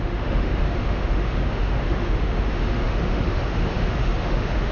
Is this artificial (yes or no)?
yes